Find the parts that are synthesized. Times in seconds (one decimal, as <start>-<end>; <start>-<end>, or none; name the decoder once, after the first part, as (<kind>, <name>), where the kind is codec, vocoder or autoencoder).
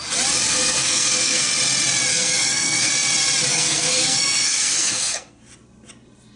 0.5-1.5 (codec, SNAC); 2.1-2.9; 3.5-5.4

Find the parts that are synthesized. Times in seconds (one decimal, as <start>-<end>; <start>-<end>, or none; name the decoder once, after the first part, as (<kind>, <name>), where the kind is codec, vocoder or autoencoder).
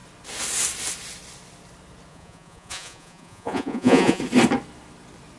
2.1-4.2 (vocoder, Vocos)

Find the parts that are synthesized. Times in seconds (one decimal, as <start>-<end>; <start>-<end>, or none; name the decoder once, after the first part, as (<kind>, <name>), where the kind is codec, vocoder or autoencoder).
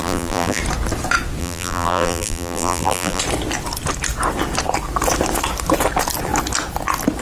0.0-0.6 (vocoder, BigVGAN v2); 1.4-3.2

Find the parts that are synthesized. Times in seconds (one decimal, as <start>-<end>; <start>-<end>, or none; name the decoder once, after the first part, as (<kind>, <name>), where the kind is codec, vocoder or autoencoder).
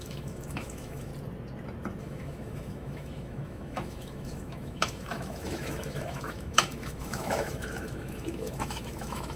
0.0-1.1 (autoencoder, DAC-VAE); 2.0-9.4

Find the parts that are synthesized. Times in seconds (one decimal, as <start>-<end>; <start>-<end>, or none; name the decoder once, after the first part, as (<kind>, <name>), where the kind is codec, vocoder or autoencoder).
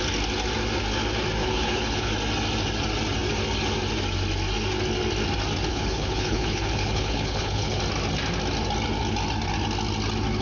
1.4-2.1 (codec, HILCodec); 5.7-7.8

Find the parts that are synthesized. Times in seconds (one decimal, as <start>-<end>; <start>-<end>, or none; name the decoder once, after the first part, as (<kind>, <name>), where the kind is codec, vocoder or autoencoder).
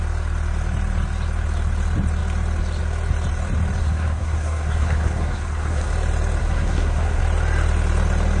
3.8-5.9 (codec, SNAC); 6.4-7.2